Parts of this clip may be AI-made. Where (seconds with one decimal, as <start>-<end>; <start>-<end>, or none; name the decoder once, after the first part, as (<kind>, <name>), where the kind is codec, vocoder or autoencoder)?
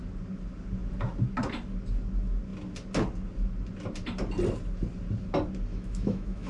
5.7-6.5 (autoencoder, DAC-VAE)